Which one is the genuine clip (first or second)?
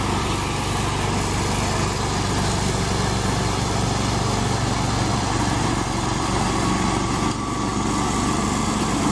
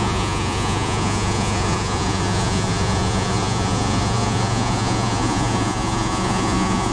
first